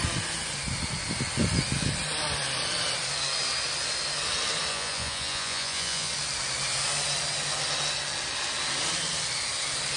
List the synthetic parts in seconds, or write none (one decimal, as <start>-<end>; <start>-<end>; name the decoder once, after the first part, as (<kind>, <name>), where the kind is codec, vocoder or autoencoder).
4.7-6.1 (vocoder, Vocos)